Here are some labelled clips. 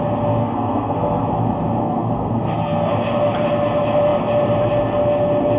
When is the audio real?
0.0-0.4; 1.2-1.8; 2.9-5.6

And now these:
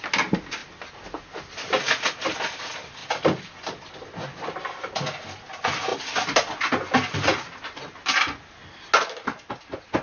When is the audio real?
0.0-10.0

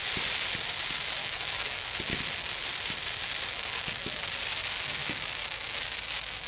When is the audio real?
0.0-1.2; 1.9-3.5; 4.2-5.0; 5.8-6.5

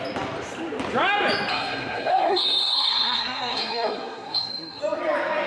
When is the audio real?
0.0-1.5; 4.8-5.5